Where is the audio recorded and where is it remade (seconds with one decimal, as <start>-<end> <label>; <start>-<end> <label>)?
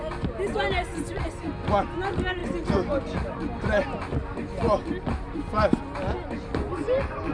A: 0.0-7.3 recorded